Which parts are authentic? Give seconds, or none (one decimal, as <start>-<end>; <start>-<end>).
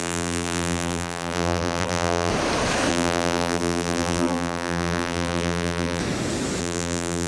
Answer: 2.3-2.9; 6.0-6.6